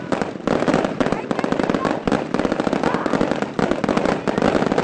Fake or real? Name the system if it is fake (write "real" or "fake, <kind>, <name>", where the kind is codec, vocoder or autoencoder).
real